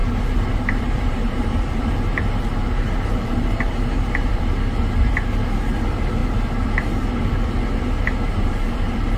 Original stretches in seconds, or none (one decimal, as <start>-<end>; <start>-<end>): 4.4-8.3